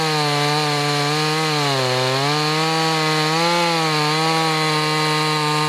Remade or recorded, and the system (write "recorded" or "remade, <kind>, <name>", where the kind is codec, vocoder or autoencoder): recorded